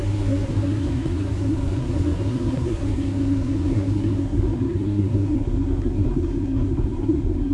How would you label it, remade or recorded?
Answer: remade